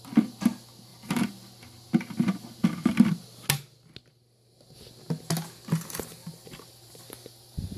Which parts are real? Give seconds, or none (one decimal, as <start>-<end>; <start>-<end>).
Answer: 0.0-6.2; 7.0-7.8